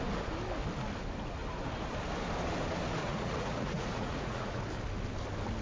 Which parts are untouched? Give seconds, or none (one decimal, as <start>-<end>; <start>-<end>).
0.0-3.0; 4.6-5.6